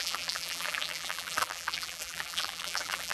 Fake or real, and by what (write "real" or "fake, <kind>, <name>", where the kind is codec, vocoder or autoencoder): fake, vocoder, BigVGAN v2